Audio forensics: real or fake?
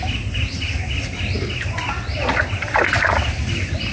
real